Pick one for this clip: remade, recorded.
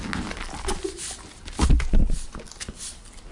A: recorded